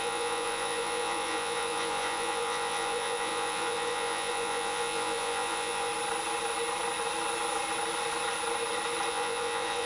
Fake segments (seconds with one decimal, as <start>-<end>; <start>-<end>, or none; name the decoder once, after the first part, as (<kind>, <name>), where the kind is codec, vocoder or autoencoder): 0.0-5.9 (vocoder, Vocos); 9.1-9.9